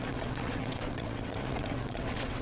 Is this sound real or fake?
fake